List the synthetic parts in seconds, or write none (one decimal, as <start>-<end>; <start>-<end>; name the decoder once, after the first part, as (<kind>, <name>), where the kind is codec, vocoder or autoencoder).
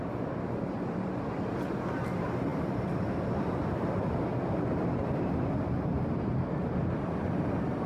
0.0-7.9 (vocoder, BigVGAN v2)